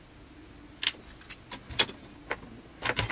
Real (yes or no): yes